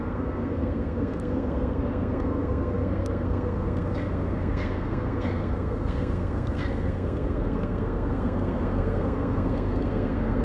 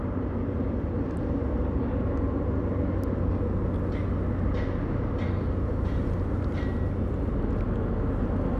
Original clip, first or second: second